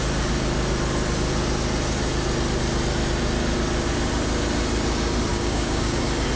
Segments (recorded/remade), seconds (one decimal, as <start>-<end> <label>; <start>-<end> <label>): 0.0-5.3 recorded; 5.3-6.0 remade; 6.0-6.4 recorded